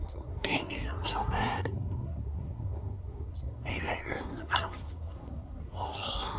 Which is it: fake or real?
fake